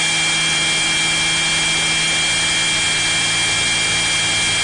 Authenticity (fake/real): real